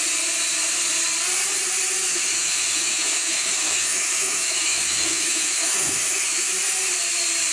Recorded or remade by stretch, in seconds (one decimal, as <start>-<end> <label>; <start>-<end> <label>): 0.0-2.1 recorded; 2.1-6.5 remade; 6.5-7.5 recorded